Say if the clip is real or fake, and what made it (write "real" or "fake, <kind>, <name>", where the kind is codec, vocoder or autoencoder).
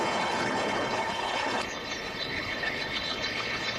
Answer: fake, codec, HILCodec